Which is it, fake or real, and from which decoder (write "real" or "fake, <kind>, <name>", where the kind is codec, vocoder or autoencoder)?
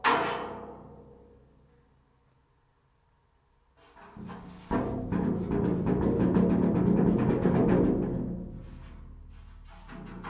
real